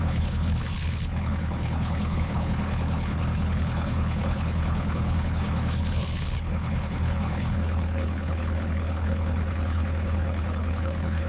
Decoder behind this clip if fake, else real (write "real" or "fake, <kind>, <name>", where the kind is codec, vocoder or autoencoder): fake, codec, HILCodec